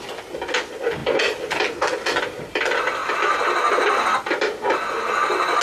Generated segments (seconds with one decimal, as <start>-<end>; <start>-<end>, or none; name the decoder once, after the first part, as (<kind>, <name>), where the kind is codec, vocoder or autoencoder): none